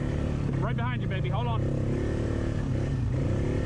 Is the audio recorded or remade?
recorded